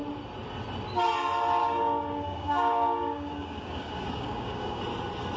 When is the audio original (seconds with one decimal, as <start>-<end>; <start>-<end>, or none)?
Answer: 0.0-1.6; 4.8-5.4